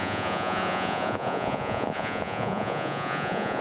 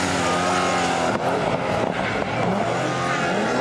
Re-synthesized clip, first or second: first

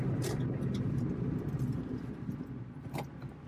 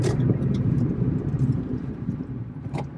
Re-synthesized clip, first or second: second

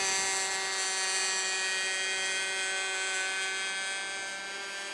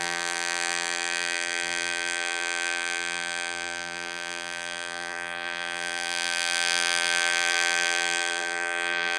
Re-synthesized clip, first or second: second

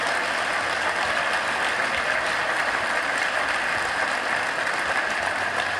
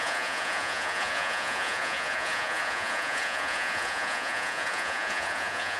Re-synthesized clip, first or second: second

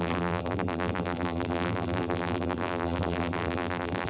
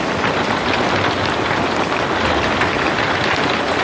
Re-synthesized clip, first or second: first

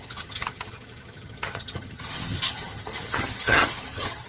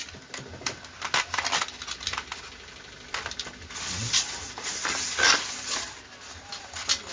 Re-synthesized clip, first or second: first